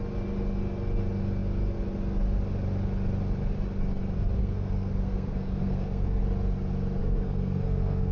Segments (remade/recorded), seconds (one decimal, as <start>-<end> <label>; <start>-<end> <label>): 0.0-4.4 recorded; 4.4-6.2 remade; 6.2-7.0 recorded; 7.0-8.1 remade